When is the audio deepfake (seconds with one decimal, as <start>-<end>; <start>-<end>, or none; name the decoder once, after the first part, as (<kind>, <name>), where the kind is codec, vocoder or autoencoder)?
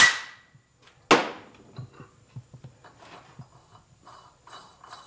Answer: none